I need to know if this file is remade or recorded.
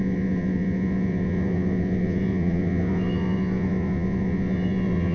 remade